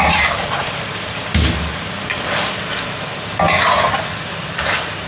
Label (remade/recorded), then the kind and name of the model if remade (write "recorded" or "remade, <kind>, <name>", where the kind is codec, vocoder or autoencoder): recorded